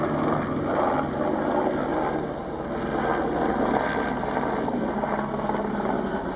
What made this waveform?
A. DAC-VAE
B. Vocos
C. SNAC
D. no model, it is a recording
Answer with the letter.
D